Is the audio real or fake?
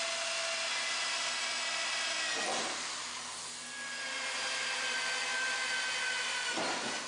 real